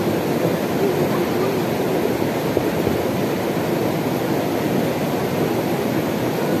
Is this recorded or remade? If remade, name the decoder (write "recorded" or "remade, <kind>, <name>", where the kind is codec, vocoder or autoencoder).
recorded